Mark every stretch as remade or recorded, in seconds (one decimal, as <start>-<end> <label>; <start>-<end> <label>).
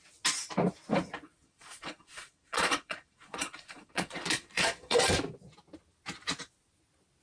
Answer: 0.0-1.4 recorded; 1.4-5.1 remade; 5.1-7.2 recorded